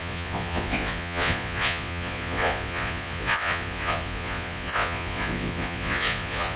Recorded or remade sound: remade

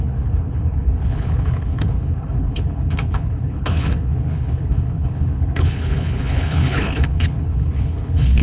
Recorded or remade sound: remade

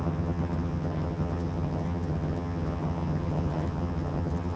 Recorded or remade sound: remade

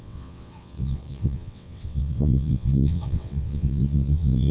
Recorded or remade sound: remade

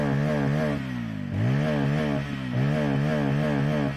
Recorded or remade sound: recorded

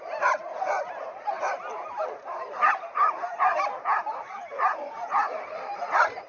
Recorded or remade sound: remade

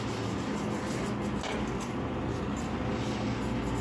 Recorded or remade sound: recorded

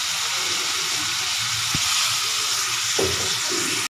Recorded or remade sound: recorded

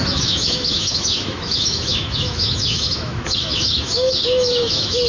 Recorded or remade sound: remade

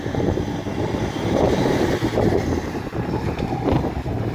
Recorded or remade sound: remade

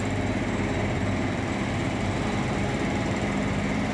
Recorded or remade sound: remade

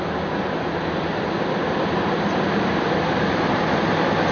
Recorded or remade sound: recorded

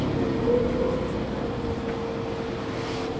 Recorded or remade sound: recorded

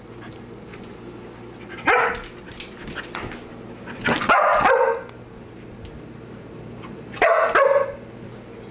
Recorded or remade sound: recorded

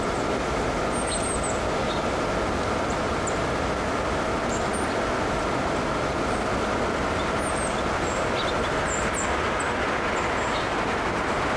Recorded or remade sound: recorded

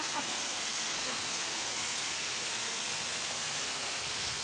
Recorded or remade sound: remade